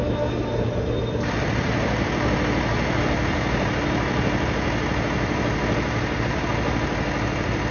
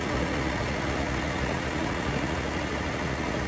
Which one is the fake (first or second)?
second